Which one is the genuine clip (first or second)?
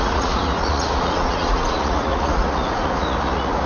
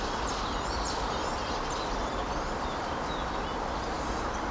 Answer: second